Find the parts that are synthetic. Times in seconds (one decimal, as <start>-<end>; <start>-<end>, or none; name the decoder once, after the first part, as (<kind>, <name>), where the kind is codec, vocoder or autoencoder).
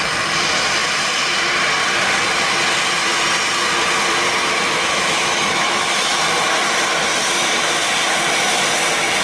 4.4-6.2 (autoencoder, DAC-VAE)